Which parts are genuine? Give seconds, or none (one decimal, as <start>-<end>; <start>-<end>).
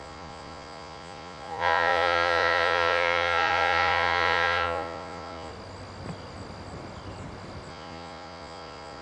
5.5-7.7